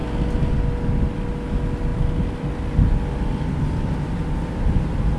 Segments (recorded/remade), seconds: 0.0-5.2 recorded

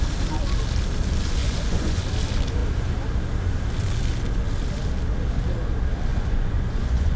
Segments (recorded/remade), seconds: 0.0-1.4 recorded; 1.4-2.0 remade; 2.0-6.1 recorded; 6.1-7.2 remade